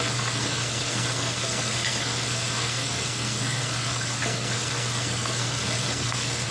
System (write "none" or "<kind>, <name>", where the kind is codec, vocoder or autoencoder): codec, SNAC